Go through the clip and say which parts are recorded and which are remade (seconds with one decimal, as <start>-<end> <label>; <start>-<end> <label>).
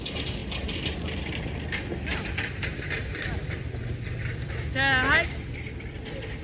0.0-0.4 recorded; 0.4-4.2 remade; 4.2-6.4 recorded